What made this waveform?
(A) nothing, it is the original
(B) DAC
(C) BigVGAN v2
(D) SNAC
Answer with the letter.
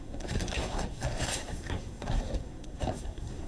D